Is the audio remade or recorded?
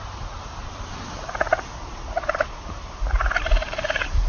remade